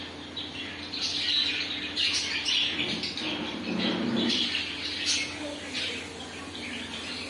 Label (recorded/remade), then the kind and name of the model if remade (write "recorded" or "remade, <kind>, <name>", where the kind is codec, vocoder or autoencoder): recorded